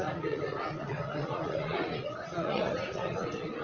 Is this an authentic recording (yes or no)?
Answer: no